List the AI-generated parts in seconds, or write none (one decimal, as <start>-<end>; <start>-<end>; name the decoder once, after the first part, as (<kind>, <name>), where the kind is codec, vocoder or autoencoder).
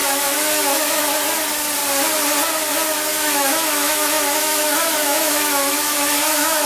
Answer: 0.0-1.0 (autoencoder, DAC-VAE); 3.1-6.7